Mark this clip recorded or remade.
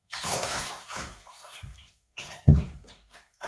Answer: remade